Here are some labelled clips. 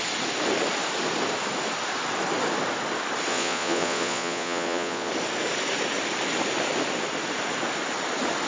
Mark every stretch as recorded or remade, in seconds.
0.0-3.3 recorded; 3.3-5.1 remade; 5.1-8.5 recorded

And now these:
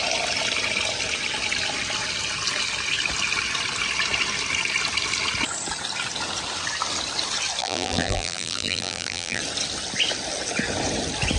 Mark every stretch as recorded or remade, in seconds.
0.0-7.6 recorded; 7.6-9.4 remade; 9.4-11.4 recorded

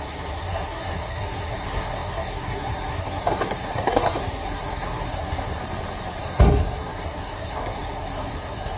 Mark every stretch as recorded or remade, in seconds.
0.0-5.6 remade; 5.6-6.2 recorded; 6.2-8.8 remade

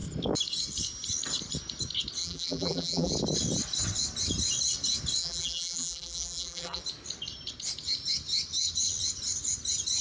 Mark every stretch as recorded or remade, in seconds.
0.0-2.2 recorded; 2.2-3.1 remade; 3.1-5.2 recorded; 5.2-6.8 remade; 6.8-10.0 recorded

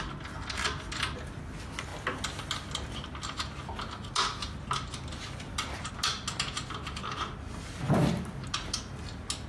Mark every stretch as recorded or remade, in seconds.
0.0-9.5 recorded

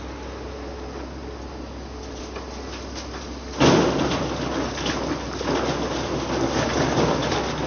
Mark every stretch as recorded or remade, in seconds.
0.0-7.7 recorded

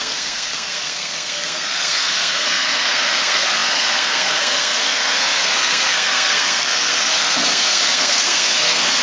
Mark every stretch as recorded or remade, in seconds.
0.0-9.0 remade